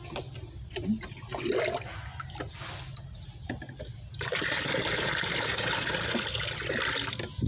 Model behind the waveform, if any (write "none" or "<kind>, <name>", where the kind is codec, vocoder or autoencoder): none